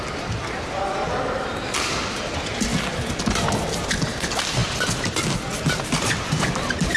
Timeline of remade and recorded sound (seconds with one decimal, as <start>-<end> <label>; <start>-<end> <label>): 0.0-7.0 recorded